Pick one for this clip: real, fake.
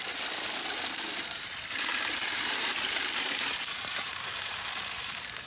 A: fake